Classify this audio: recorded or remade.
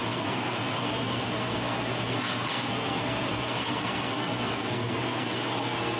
remade